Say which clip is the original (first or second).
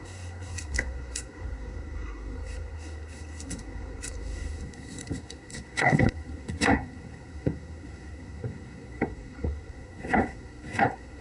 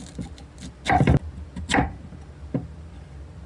second